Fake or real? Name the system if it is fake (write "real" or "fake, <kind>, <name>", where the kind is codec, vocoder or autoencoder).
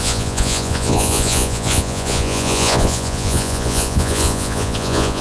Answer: fake, vocoder, Vocos